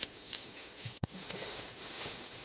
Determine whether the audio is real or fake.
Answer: fake